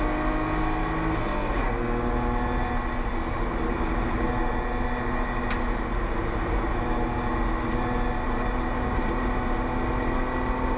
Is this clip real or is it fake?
real